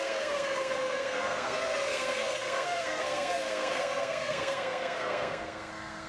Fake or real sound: fake